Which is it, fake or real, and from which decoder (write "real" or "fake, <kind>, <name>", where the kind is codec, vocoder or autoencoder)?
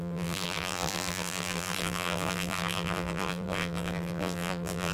fake, vocoder, BigVGAN v2